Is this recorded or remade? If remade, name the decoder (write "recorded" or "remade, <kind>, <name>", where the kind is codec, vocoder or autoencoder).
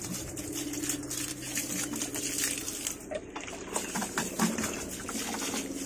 recorded